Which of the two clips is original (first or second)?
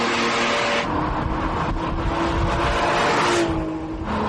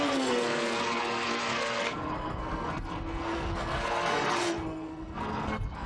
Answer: first